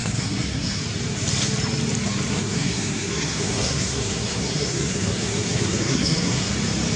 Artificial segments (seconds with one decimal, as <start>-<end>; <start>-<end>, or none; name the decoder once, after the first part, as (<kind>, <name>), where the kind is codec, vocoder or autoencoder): 0.0-0.8 (codec, SNAC); 2.3-6.5